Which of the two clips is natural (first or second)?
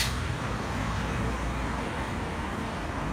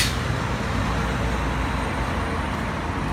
second